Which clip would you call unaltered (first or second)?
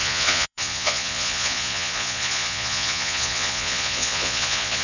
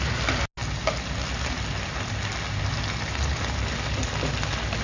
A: second